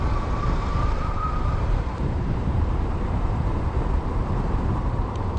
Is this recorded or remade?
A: remade